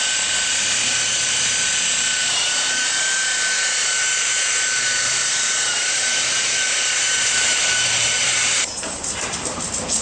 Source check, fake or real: fake